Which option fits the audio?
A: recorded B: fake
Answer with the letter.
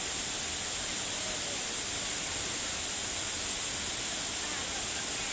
A